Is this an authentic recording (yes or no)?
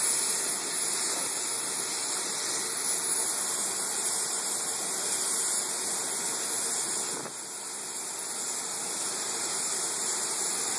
yes